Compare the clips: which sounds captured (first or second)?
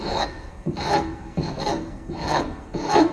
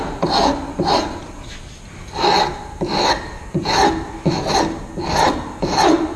second